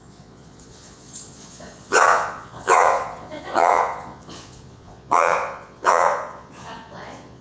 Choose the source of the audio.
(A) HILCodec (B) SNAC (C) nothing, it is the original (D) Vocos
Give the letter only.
D